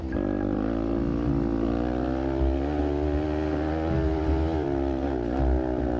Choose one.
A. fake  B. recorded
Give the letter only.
B